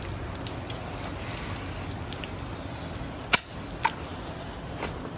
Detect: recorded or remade recorded